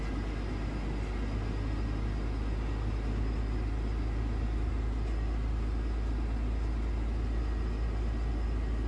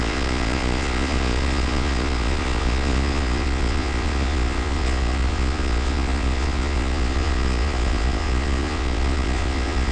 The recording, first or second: first